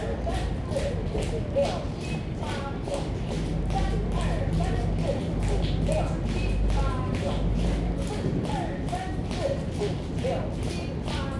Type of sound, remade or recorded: recorded